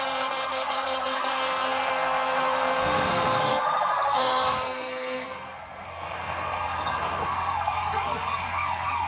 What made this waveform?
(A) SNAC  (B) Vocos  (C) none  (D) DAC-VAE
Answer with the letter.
A